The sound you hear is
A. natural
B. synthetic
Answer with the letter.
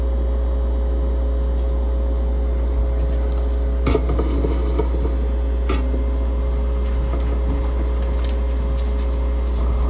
A